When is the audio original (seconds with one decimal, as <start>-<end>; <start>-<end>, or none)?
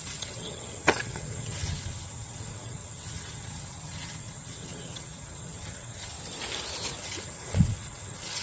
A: 6.1-7.0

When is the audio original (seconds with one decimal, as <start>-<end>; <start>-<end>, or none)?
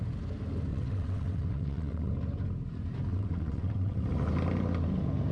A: 0.0-0.7; 2.1-3.1; 4.0-5.3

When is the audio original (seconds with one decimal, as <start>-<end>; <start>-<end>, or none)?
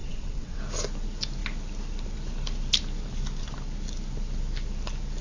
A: 0.6-5.2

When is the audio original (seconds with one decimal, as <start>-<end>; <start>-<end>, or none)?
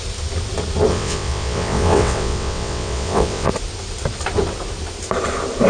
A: 0.0-0.9; 3.5-5.7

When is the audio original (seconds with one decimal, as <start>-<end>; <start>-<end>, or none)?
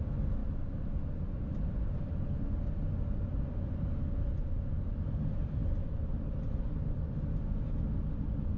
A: 0.0-8.6